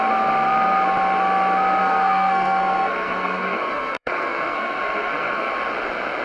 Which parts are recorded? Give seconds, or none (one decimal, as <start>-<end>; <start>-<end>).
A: 0.0-1.8; 5.5-6.2